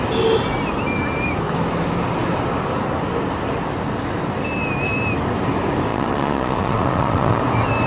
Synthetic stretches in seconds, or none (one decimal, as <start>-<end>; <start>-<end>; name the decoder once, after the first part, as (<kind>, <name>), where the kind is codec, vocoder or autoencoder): 5.9-7.4 (vocoder, Vocos)